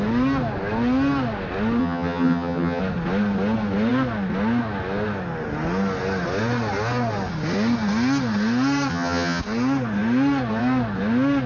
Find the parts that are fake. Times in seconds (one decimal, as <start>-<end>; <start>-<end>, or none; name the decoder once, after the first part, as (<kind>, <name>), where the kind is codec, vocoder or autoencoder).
1.8-2.8 (vocoder, HiFi-GAN); 8.9-9.4